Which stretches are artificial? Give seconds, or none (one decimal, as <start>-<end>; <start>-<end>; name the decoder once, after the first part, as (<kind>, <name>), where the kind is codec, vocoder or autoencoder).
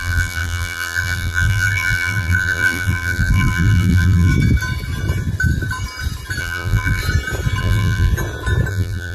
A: 0.0-4.3 (vocoder, BigVGAN v2); 6.4-7.0; 7.6-8.1; 8.7-9.1